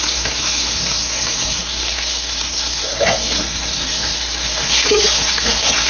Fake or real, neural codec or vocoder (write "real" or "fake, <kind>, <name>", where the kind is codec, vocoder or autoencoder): fake, codec, SNAC